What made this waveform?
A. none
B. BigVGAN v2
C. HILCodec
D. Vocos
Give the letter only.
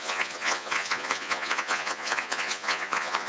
D